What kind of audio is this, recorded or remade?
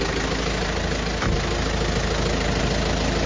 recorded